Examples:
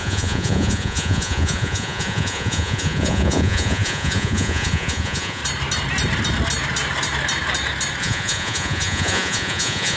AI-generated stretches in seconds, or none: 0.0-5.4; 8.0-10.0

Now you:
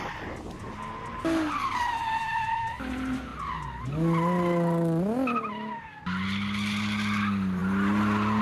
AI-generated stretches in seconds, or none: none

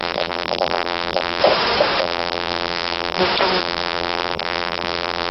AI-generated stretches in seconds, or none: 0.0-1.4; 2.0-3.2; 3.6-5.3

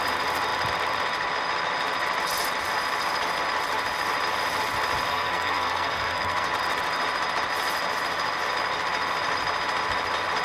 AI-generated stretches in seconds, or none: 5.1-6.5

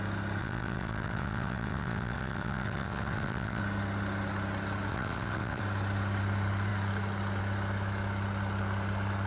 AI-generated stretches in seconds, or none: 0.4-3.6; 4.9-5.6

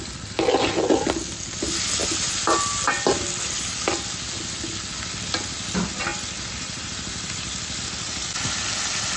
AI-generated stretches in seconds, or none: 6.1-8.5

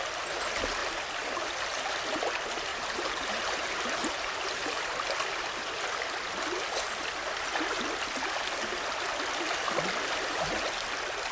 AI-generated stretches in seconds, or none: 2.7-4.3